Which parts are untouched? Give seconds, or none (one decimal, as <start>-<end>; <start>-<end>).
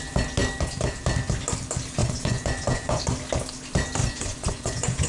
0.0-2.0; 3.0-4.0